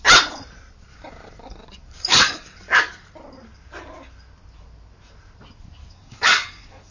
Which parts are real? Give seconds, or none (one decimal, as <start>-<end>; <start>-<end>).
0.0-0.9; 3.1-5.8

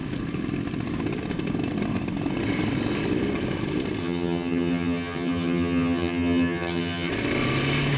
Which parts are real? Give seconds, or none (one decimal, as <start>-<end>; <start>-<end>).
0.0-4.0; 7.1-8.0

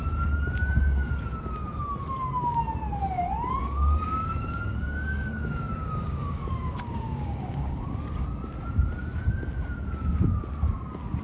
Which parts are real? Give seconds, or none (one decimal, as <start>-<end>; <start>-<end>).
0.0-0.6; 1.1-3.6; 8.0-11.2

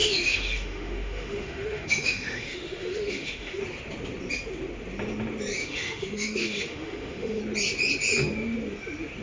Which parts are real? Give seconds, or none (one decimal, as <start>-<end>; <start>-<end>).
3.6-5.6; 7.4-9.2

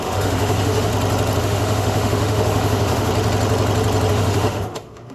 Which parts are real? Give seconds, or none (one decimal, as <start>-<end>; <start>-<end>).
0.9-1.4; 3.1-4.1

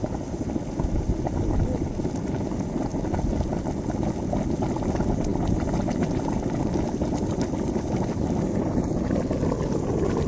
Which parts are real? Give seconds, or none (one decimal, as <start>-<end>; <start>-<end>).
0.0-10.3

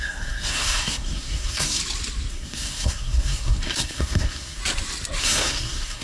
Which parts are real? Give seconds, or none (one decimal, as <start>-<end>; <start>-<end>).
1.8-2.3; 4.6-5.2

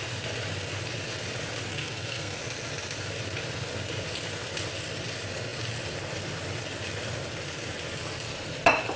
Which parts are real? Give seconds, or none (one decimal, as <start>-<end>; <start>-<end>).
0.0-1.7; 2.4-9.0